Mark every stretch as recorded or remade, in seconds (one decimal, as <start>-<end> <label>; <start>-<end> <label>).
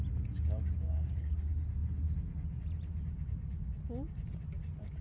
0.0-5.0 recorded